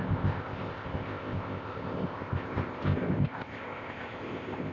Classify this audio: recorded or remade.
remade